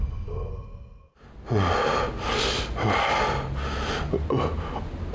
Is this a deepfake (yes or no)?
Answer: no